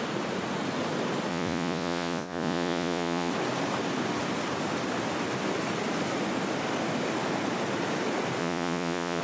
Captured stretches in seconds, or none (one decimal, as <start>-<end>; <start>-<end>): 0.0-1.3; 3.3-8.4